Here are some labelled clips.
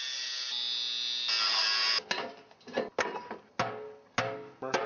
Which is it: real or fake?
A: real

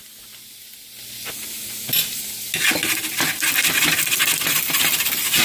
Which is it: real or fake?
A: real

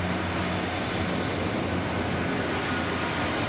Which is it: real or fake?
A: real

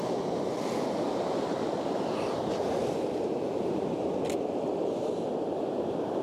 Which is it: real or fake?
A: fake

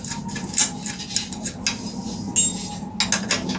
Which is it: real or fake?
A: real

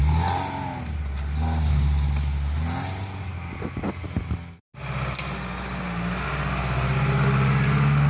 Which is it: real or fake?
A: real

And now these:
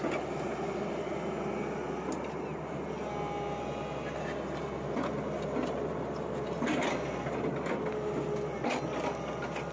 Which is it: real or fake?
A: real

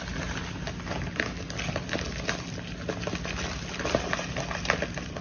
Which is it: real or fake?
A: real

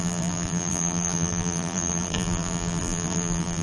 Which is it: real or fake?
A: fake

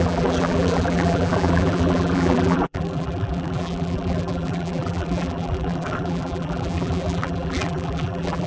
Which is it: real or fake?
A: fake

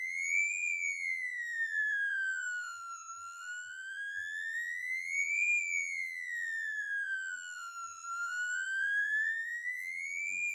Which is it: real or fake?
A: fake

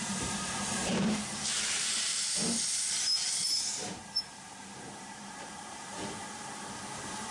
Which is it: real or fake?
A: fake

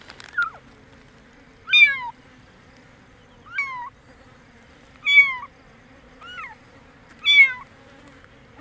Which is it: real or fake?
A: real